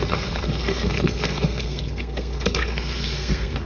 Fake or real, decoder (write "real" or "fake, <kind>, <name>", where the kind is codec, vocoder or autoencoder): fake, codec, SNAC